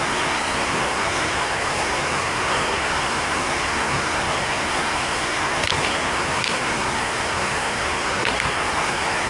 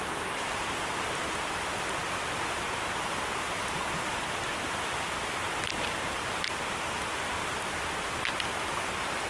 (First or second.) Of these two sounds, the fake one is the first